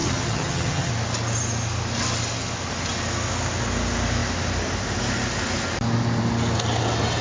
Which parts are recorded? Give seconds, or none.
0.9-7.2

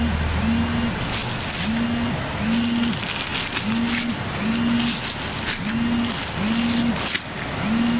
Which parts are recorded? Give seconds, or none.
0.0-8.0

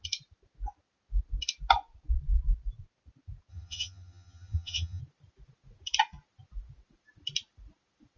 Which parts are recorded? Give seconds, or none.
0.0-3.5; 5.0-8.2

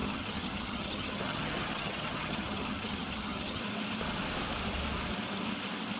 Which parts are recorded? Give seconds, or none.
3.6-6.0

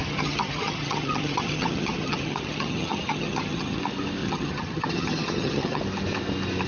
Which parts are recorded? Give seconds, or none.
3.8-4.2; 5.8-6.7

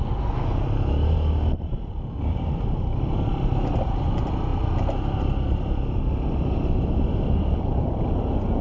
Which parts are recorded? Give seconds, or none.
0.0-8.6